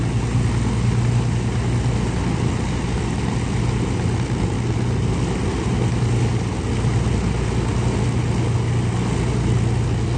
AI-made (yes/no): no